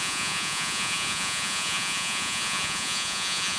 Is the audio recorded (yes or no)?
no